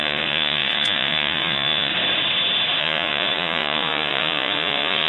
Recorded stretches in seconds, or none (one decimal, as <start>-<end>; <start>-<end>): 1.9-2.8